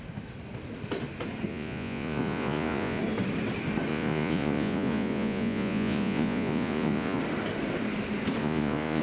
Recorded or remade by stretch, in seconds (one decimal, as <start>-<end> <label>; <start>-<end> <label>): 0.0-1.5 recorded; 1.5-3.0 remade; 3.0-3.9 recorded; 3.9-7.2 remade; 7.2-8.4 recorded; 8.4-9.0 remade

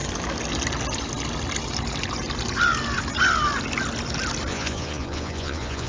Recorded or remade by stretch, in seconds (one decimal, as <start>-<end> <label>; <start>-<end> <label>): 0.0-4.5 recorded; 4.5-5.9 remade